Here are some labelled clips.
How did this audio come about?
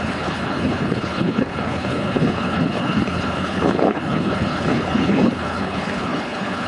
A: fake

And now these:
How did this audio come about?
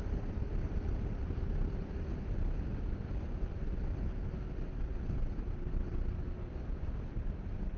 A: real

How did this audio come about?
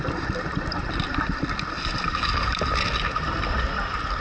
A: real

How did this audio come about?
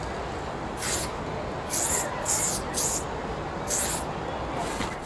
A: real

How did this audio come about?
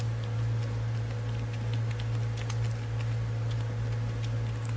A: real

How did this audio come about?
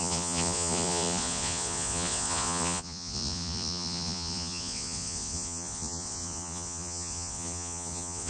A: fake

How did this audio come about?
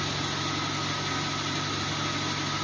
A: real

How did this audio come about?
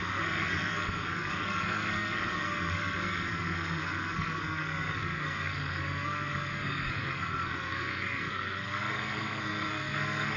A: fake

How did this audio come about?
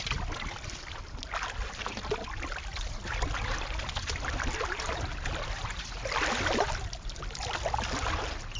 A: real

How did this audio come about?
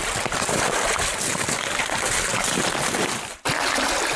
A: real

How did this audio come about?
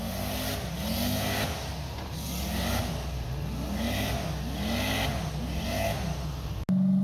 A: real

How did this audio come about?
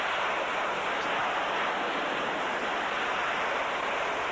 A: real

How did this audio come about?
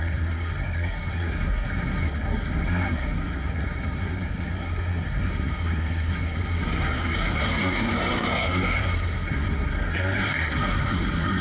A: fake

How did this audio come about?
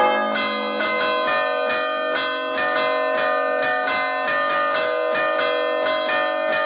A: real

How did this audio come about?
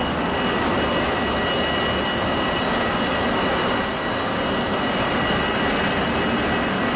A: real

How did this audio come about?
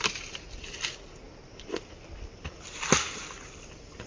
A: real